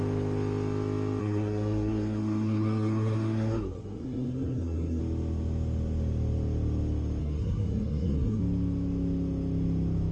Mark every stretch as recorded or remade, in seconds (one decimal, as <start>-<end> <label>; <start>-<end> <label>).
0.0-1.2 recorded; 1.2-5.0 remade; 5.0-7.2 recorded; 7.2-8.4 remade; 8.4-10.1 recorded